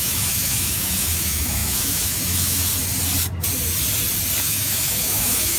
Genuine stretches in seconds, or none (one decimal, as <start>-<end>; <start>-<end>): 2.7-4.4